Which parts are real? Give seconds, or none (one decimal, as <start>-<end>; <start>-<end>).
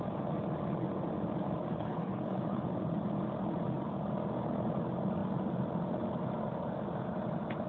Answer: 0.0-1.7; 2.7-7.7